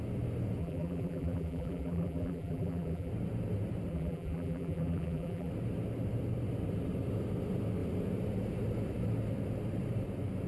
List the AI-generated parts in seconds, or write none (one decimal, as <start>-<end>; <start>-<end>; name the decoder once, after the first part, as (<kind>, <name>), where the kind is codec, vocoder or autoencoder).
0.6-3.1 (vocoder, BigVGAN v2); 3.9-5.5